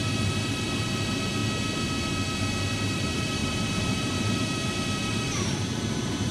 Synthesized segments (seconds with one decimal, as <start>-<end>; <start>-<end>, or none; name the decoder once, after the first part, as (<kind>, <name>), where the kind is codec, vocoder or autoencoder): 0.0-1.4 (vocoder, BigVGAN v2); 2.7-6.3